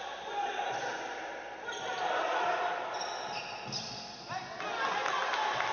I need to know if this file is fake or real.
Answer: real